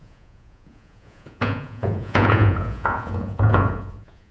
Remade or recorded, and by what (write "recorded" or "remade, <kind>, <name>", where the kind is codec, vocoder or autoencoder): remade, vocoder, Vocos